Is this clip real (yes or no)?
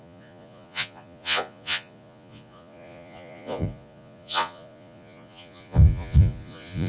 no